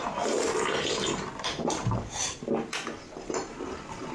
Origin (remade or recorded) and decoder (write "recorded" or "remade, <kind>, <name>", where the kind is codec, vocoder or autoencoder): recorded